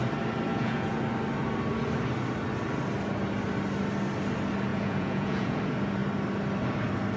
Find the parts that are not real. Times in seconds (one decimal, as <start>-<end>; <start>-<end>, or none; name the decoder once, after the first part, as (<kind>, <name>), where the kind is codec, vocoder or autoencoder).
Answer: 0.5-1.0 (vocoder, Vocos); 4.7-5.6